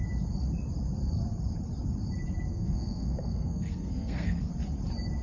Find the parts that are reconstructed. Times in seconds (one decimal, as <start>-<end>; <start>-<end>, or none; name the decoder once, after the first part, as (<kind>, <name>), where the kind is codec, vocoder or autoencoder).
2.5-4.5 (codec, SNAC)